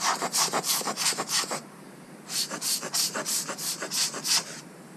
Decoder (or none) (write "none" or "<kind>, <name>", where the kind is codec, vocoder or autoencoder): vocoder, BigVGAN v2